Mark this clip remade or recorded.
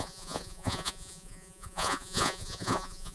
remade